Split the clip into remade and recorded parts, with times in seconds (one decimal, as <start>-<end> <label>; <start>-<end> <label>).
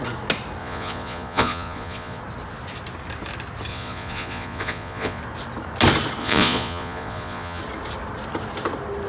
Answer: 0.0-0.6 recorded; 0.6-2.2 remade; 2.2-3.7 recorded; 3.7-5.2 remade; 5.2-6.2 recorded; 6.2-7.6 remade; 7.6-9.1 recorded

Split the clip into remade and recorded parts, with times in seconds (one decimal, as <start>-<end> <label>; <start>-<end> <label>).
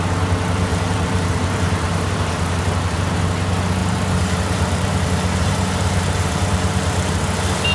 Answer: 0.0-0.7 recorded; 0.7-3.2 remade; 3.2-3.8 recorded; 3.8-7.2 remade; 7.2-7.7 recorded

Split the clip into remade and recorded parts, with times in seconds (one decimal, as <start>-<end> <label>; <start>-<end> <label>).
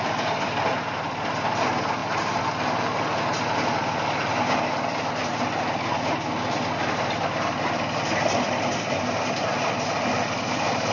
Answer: 0.0-10.9 recorded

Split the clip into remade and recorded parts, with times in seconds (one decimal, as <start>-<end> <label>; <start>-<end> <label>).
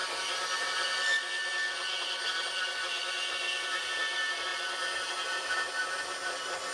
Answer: 0.0-6.7 recorded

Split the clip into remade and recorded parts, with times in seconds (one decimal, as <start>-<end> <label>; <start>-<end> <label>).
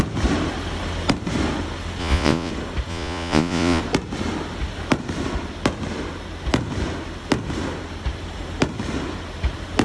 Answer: 0.0-2.0 recorded; 2.0-2.5 remade; 2.5-2.9 recorded; 2.9-3.8 remade; 3.8-9.8 recorded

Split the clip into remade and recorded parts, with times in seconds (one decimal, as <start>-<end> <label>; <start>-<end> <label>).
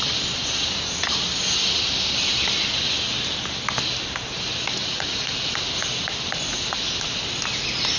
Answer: 0.0-4.8 recorded; 4.8-5.5 remade; 5.5-8.0 recorded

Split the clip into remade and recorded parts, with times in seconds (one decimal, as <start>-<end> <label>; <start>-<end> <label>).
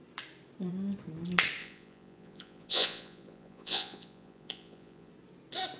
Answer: 0.0-1.6 recorded; 1.6-5.1 remade; 5.1-5.8 recorded